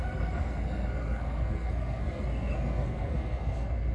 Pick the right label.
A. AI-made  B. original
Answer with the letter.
A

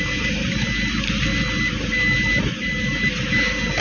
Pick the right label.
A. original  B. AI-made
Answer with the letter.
A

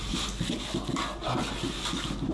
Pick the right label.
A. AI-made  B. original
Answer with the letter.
B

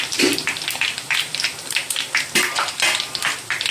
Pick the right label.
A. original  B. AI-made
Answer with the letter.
A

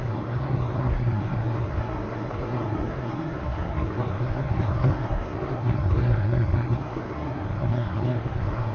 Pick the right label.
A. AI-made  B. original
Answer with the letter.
A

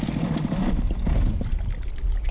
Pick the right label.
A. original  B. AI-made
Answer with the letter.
A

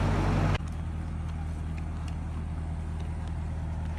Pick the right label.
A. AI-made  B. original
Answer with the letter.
B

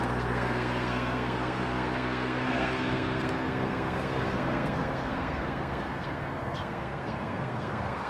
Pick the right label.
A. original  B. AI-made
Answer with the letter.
B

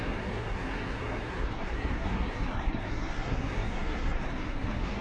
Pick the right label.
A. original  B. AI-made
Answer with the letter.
B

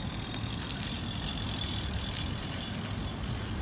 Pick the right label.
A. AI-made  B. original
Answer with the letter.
B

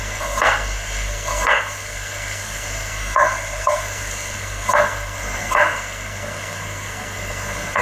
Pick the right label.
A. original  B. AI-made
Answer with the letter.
B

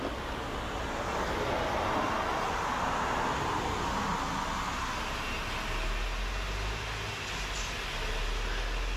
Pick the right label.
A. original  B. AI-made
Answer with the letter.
A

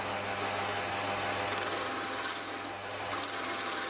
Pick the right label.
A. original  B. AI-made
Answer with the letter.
A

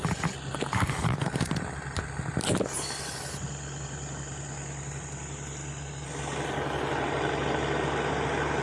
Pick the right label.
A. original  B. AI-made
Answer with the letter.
A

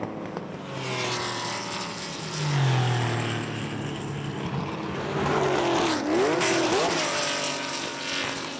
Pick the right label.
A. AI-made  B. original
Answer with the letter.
B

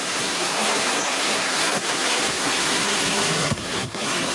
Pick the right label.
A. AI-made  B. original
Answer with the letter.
A